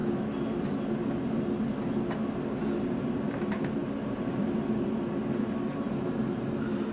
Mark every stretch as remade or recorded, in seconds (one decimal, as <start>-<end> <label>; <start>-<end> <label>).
0.0-6.9 recorded